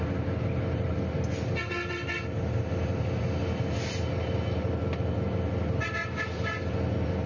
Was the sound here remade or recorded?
recorded